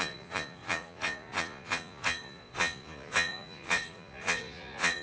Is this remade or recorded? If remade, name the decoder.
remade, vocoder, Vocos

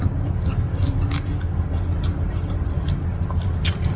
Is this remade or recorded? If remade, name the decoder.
recorded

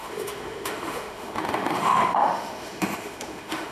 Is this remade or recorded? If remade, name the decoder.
remade, autoencoder, DAC-VAE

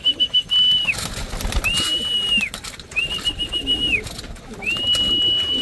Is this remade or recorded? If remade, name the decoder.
recorded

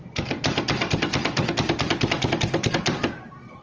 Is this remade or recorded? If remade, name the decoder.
recorded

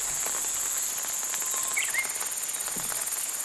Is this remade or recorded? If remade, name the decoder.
recorded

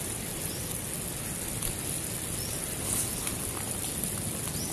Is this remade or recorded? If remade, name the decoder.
recorded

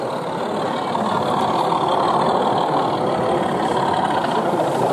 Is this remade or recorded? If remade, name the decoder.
recorded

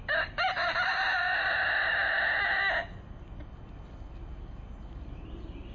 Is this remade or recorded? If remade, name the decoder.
recorded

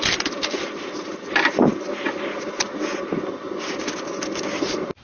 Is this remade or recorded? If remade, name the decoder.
recorded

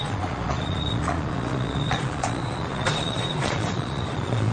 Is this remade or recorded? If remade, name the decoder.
remade, vocoder, Vocos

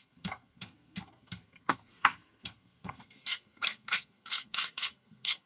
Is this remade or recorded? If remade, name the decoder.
remade, codec, SNAC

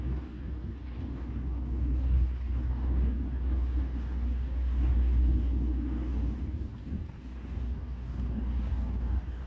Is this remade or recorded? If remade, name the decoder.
remade, codec, DAC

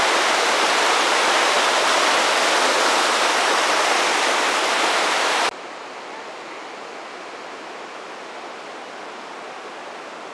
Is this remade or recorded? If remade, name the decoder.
recorded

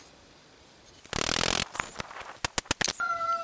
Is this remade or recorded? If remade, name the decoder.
recorded